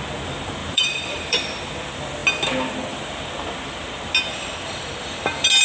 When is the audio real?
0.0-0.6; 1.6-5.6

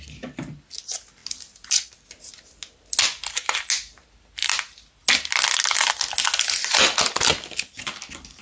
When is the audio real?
0.0-8.4

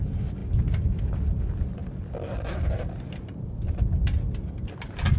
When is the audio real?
0.0-5.2

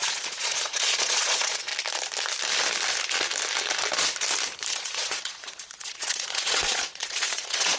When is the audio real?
1.7-4.7

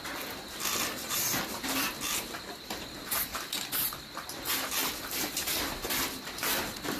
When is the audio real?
0.0-7.0

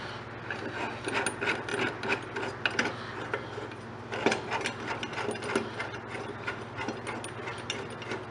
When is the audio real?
0.0-8.3

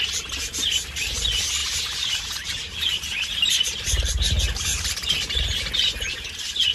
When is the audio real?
0.0-1.6; 3.6-4.7; 5.4-6.7